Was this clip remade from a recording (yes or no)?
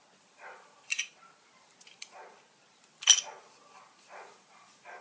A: no